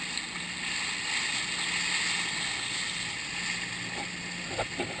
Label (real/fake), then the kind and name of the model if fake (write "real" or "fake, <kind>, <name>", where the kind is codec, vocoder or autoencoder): real